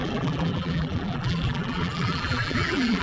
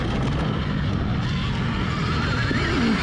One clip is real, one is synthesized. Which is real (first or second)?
second